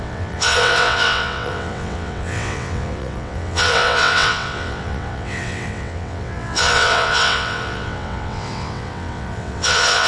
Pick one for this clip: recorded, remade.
remade